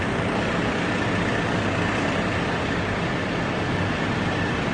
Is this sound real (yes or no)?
yes